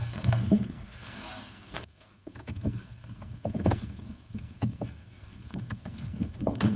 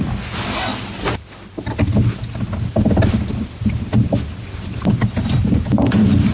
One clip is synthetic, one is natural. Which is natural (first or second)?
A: second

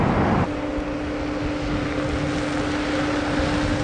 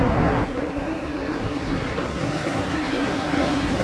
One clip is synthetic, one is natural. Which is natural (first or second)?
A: first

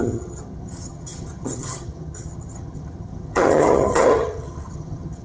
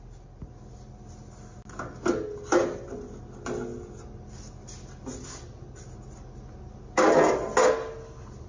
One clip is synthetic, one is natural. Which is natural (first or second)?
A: second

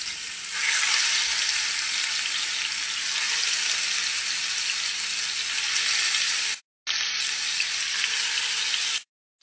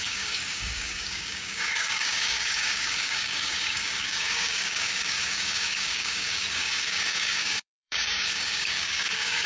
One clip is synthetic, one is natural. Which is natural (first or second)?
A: first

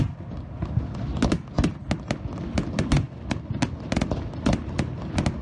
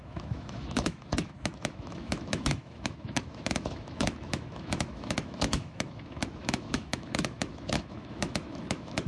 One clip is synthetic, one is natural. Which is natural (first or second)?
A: first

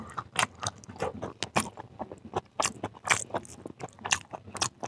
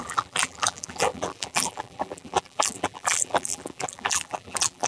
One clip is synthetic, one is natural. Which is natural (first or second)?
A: first